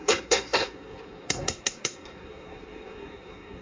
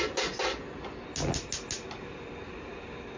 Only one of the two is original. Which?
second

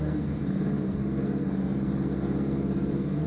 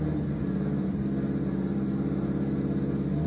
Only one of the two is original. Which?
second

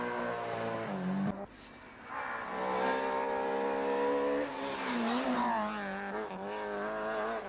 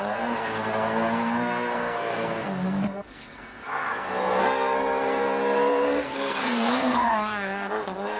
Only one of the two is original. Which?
first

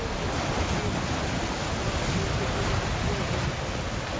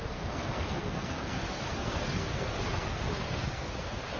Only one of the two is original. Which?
first